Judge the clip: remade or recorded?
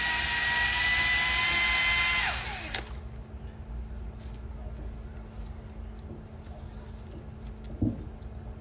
recorded